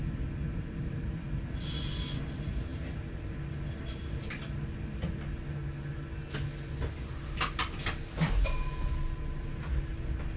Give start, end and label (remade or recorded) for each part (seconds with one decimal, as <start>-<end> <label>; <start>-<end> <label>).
0.0-10.4 recorded